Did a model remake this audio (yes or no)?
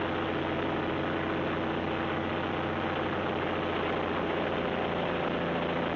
no